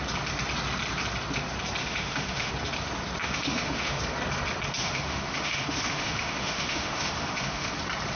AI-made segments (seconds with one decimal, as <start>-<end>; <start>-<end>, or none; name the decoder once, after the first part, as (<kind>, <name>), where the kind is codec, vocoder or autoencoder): 1.8-2.5 (autoencoder, DAC-VAE); 3.2-4.0; 4.8-7.7